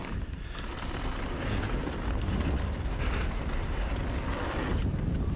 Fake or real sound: real